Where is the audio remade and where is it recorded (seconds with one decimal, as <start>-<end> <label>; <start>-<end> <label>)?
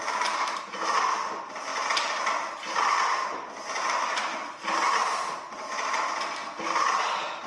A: 0.0-7.5 recorded